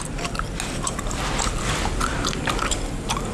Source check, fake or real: real